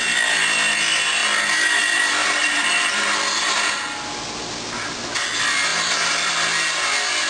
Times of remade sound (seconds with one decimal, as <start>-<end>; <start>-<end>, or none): 2.2-3.0